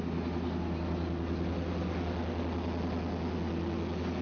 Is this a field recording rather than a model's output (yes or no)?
yes